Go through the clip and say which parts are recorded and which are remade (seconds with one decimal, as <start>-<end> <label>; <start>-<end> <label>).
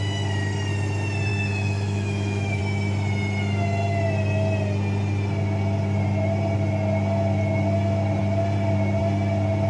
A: 0.0-1.3 recorded; 1.3-2.6 remade; 2.6-9.7 recorded